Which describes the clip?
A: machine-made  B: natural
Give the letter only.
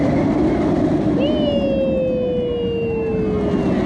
B